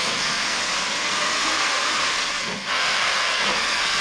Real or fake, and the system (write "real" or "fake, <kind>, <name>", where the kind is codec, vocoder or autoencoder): fake, codec, SNAC